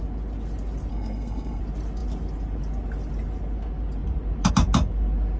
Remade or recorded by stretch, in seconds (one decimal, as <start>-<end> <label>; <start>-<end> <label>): 0.0-0.9 recorded; 0.9-1.6 remade; 1.6-5.4 recorded